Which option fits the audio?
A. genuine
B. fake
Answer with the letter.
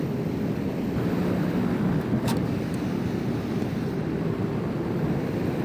A